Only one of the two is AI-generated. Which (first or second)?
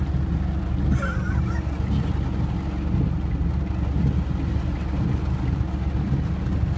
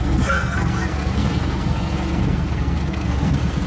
second